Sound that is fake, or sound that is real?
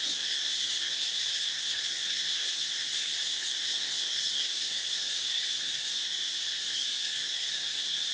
fake